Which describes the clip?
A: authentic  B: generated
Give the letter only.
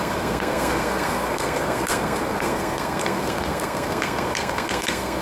B